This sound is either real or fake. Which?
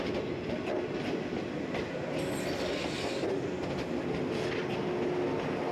real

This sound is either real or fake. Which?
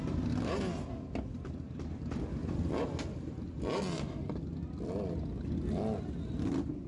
real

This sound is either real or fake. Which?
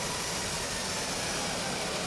fake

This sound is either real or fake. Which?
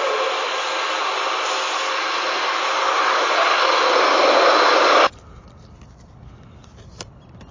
real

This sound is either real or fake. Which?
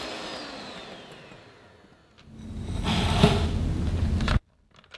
real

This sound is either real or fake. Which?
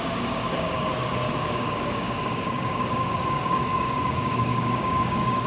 fake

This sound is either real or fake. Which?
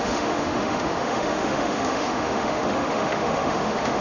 fake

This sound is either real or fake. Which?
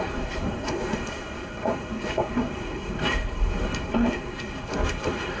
fake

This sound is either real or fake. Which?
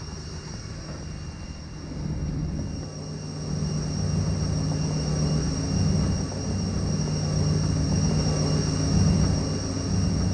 real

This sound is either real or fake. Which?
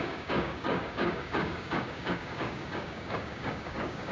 fake